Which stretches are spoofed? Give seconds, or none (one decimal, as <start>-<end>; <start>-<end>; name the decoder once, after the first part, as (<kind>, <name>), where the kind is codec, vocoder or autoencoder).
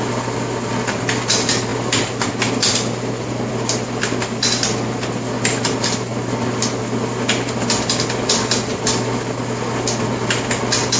none